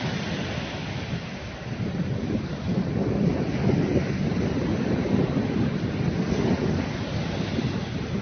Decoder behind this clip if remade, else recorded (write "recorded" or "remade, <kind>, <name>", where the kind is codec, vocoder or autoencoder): recorded